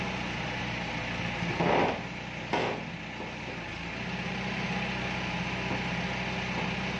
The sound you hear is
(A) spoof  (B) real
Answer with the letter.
B